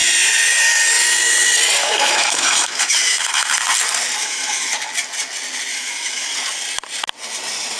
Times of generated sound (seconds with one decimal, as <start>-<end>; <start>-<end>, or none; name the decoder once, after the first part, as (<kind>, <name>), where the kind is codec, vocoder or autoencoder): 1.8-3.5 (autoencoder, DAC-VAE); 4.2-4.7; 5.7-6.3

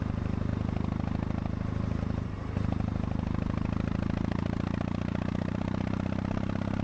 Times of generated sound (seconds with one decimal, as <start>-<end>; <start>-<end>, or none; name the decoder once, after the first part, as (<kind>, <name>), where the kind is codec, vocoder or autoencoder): 0.0-0.5 (vocoder, BigVGAN v2); 2.0-6.8

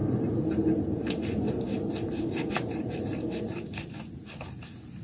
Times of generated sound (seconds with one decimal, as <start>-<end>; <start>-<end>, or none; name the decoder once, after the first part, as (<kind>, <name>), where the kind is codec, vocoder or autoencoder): 0.0-3.7 (vocoder, BigVGAN v2); 4.2-5.0

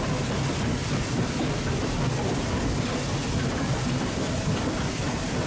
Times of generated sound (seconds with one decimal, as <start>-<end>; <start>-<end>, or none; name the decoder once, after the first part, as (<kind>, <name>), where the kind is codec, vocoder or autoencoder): 3.2-5.5 (vocoder, BigVGAN v2)